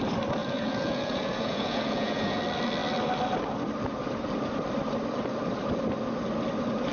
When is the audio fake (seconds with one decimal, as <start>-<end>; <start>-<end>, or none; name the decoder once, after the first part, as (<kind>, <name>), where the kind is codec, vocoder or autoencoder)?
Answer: 0.4-2.4 (vocoder, Vocos)